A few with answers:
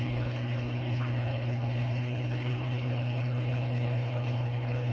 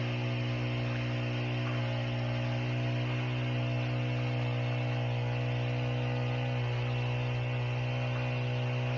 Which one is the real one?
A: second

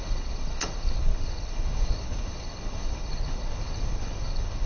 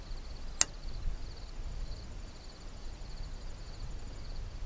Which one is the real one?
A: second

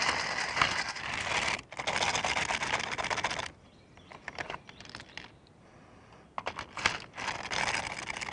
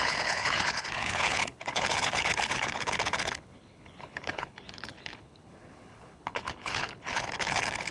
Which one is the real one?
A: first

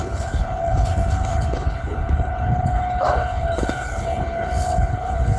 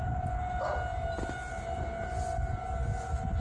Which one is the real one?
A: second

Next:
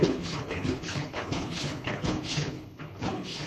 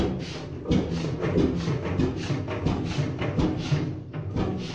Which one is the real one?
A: second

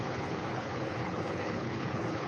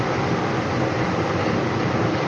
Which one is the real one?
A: second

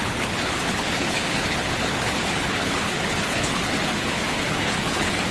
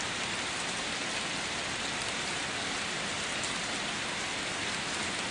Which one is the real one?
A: second